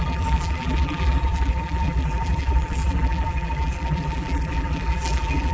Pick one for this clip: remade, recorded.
remade